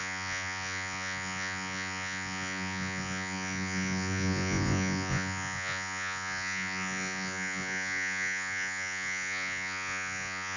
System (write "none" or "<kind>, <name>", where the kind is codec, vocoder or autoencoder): vocoder, Vocos